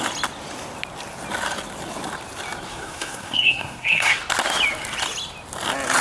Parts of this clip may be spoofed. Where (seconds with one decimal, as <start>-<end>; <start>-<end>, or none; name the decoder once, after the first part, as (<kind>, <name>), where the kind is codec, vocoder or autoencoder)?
2.7-4.2 (codec, SNAC)